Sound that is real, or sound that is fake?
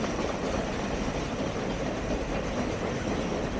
fake